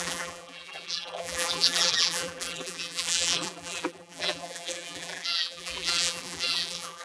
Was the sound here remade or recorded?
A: remade